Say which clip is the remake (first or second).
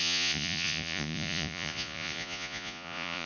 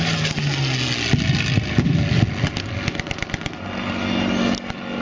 first